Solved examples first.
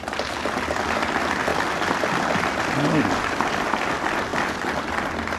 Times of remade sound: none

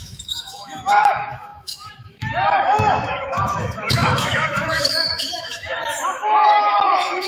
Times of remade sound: 0.0-7.3 (autoencoder, DAC-VAE)